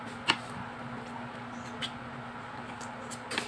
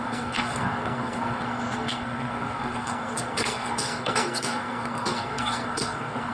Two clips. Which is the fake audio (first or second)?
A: second